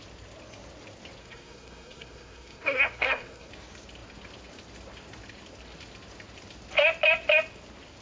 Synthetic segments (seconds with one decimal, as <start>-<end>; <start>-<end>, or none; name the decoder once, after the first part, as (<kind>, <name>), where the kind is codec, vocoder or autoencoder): 1.2-3.5 (codec, SNAC)